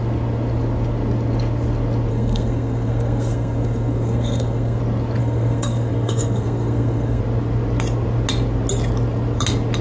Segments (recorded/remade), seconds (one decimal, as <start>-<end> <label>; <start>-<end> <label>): 0.0-2.1 recorded; 2.1-4.8 remade; 4.8-5.2 recorded; 5.2-7.2 remade; 7.2-9.8 recorded